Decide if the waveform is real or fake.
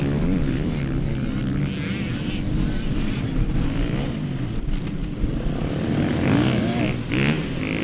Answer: real